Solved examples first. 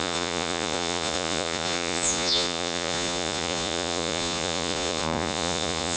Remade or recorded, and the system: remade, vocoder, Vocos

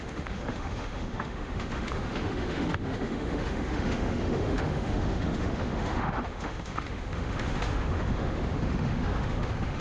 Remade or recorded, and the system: remade, autoencoder, DAC-VAE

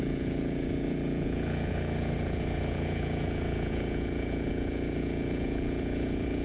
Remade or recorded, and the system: remade, vocoder, Vocos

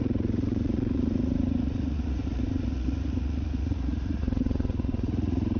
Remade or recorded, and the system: remade, vocoder, Vocos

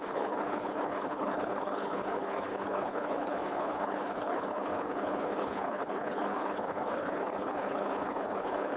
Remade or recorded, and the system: remade, codec, HILCodec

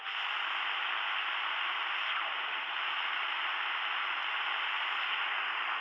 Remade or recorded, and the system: recorded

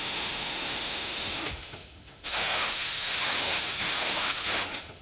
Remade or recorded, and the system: remade, autoencoder, DAC-VAE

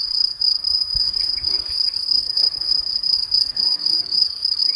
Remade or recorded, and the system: remade, codec, SNAC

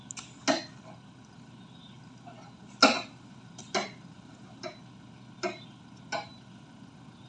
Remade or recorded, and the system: recorded